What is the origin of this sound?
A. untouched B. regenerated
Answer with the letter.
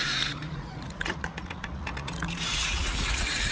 B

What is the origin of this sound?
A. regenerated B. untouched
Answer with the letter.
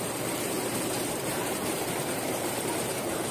A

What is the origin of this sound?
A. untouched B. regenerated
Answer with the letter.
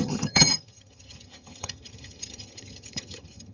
B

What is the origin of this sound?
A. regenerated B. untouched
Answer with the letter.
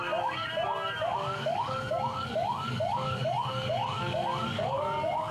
A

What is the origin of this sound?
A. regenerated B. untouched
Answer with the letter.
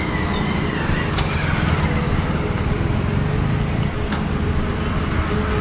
B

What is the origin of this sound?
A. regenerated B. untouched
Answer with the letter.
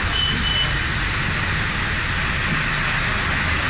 B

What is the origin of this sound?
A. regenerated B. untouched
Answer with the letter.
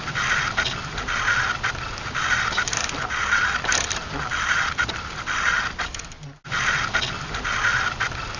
B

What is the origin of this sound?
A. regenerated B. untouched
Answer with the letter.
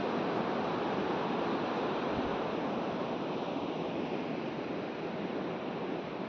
B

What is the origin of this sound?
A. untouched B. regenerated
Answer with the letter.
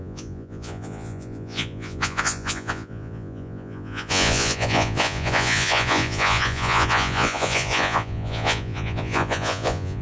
B